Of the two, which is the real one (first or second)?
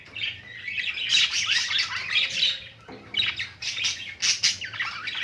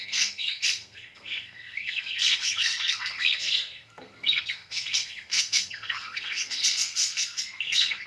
first